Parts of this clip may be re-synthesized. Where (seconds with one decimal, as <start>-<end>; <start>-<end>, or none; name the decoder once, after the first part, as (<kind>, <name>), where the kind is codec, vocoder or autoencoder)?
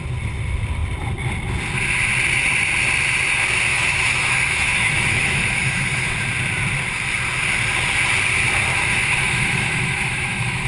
3.7-6.1 (autoencoder, DAC-VAE); 8.7-10.7